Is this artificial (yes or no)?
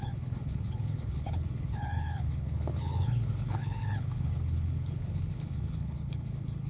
yes